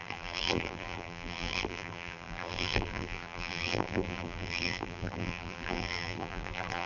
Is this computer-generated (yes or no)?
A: yes